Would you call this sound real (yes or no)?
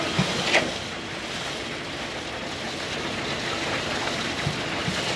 yes